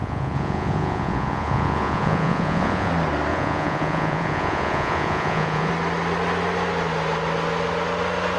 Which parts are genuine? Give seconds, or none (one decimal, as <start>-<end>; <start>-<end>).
2.9-3.3; 5.7-8.4